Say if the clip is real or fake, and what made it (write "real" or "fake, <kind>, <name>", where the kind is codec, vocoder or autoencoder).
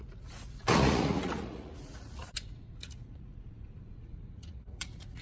fake, vocoder, Vocos